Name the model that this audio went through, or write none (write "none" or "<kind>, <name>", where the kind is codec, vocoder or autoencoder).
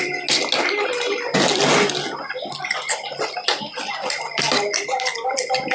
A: none